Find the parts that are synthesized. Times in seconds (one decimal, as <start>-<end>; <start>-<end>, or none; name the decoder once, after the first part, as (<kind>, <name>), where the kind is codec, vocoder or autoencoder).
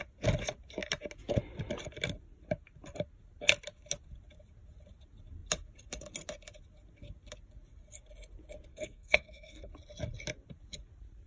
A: 8.7-9.7 (codec, SNAC)